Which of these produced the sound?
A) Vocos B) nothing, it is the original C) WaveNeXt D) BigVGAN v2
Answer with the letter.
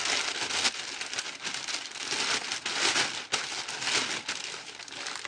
B